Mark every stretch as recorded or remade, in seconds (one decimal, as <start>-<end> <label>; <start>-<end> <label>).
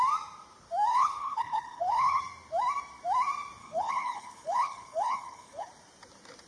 0.0-0.9 recorded; 0.9-2.2 remade; 2.2-3.6 recorded; 3.6-5.7 remade; 5.7-6.5 recorded